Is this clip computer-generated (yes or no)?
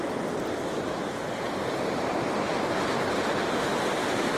no